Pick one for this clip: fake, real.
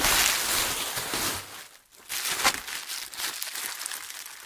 real